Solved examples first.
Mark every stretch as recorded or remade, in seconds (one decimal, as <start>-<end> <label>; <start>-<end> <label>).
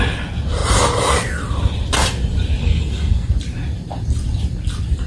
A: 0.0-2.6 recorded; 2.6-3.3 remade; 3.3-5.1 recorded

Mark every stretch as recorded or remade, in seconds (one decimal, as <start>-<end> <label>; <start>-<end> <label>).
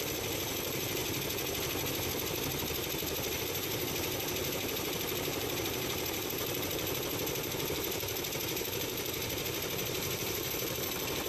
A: 0.0-1.0 remade; 1.0-3.4 recorded; 3.4-11.3 remade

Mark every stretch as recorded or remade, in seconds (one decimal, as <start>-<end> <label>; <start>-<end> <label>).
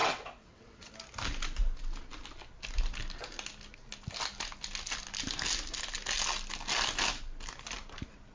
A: 0.0-0.9 remade; 0.9-8.3 recorded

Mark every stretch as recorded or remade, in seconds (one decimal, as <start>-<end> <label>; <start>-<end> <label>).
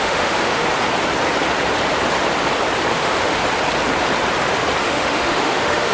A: 0.0-0.6 remade; 0.6-2.9 recorded; 2.9-3.4 remade; 3.4-4.8 recorded; 4.8-5.9 remade